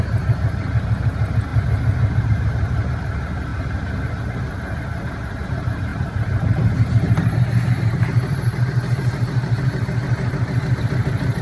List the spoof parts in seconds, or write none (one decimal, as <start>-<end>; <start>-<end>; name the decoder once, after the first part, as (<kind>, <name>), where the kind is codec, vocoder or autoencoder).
0.0-1.5 (vocoder, BigVGAN v2); 2.2-3.5; 4.2-11.4